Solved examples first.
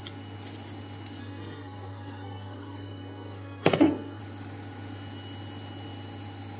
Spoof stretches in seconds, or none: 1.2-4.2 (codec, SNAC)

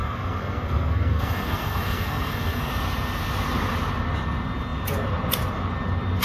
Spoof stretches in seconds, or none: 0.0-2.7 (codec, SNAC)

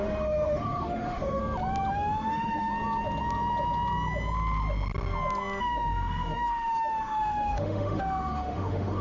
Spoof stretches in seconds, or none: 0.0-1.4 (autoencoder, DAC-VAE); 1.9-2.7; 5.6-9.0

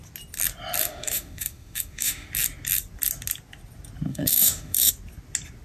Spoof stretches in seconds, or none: 0.8-2.3 (autoencoder, DAC-VAE); 4.1-4.9

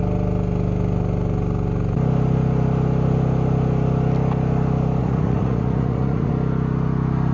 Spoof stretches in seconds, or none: 5.0-6.3 (vocoder, Vocos)

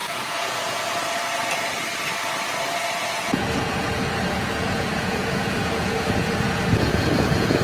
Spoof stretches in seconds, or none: 0.0-0.9 (vocoder, Vocos); 3.0-7.6

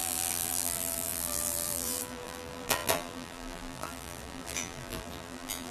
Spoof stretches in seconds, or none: 0.0-5.7 (vocoder, BigVGAN v2)